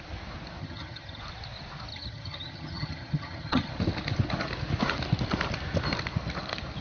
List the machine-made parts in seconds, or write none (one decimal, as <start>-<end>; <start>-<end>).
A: 0.6-1.2; 1.9-3.7